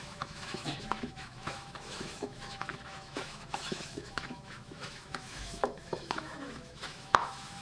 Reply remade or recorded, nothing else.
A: remade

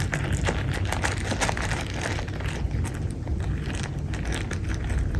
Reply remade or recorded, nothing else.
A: recorded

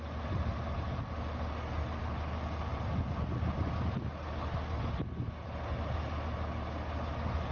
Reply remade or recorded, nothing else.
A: recorded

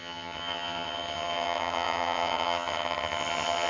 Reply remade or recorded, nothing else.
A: remade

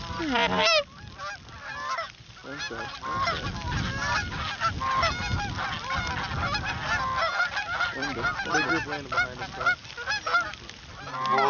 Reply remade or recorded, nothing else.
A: recorded